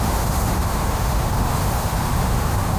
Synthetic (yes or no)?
yes